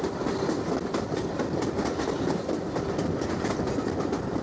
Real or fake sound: real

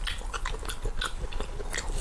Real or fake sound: real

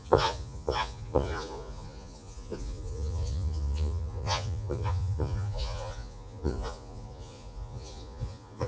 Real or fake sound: fake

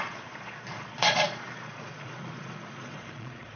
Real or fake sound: fake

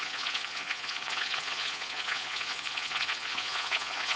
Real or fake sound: fake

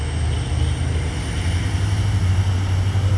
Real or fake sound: real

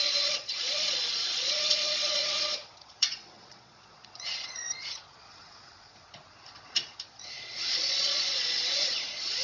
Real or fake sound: fake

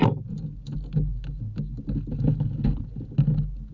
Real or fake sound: real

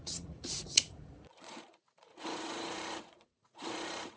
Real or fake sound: fake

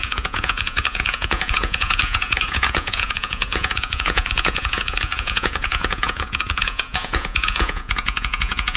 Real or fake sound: fake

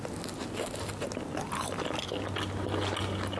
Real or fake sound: real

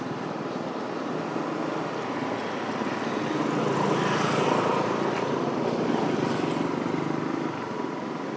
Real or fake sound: real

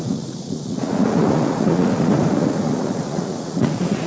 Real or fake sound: fake